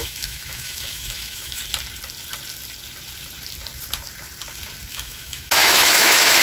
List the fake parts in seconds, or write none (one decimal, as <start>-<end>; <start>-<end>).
0.0-1.6; 4.9-6.4